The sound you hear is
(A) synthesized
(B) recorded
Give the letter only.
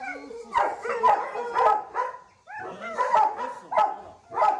B